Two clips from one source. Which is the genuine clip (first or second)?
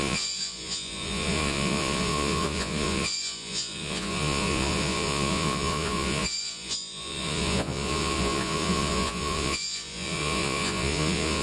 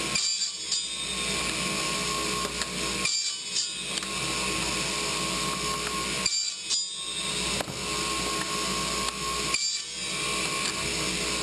second